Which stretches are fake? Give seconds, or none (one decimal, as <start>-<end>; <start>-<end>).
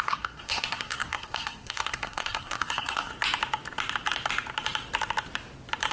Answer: 0.0-3.1